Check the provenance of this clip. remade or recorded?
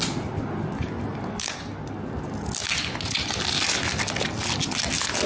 recorded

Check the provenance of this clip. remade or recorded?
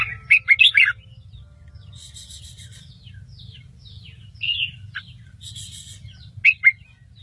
recorded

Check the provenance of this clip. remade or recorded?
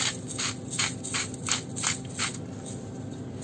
recorded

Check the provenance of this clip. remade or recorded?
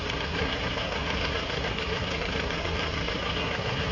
remade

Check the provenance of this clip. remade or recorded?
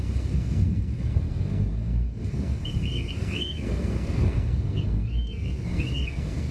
remade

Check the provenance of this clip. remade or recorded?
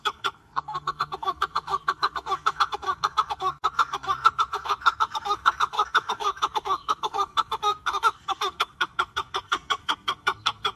remade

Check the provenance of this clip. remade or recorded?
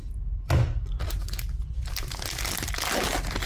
recorded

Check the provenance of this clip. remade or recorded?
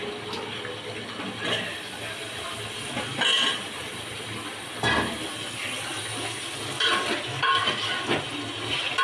recorded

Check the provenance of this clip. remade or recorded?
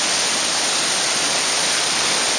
recorded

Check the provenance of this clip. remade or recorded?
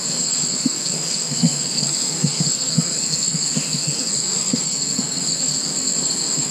remade